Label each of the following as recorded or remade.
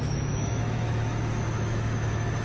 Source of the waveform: remade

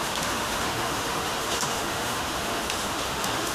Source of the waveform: remade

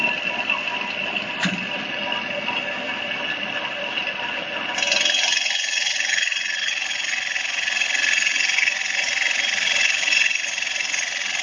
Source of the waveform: recorded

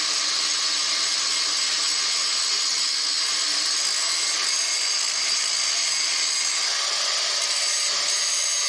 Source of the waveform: recorded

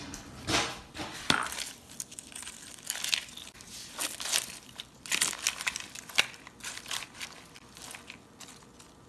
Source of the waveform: recorded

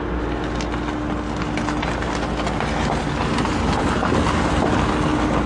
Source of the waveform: recorded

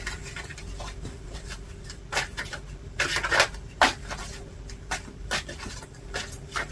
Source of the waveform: recorded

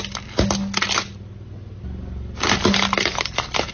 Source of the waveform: recorded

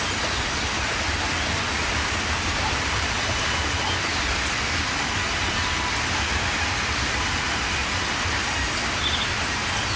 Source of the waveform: recorded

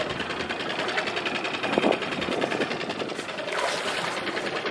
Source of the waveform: recorded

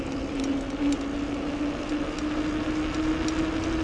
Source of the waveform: recorded